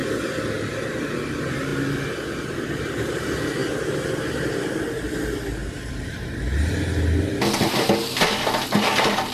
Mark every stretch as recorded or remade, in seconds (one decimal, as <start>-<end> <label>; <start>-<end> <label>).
0.0-5.6 recorded; 5.6-6.3 remade; 6.3-9.3 recorded